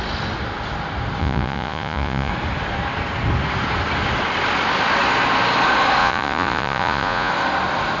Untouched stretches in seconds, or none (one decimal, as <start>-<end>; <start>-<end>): 0.0-1.2; 2.3-6.0; 7.3-8.0